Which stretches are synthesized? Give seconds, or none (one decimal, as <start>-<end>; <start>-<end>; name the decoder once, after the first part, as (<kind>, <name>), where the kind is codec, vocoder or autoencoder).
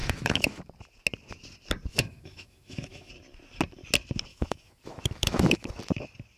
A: 0.0-0.6 (autoencoder, DAC-VAE); 1.9-3.1; 4.3-5.8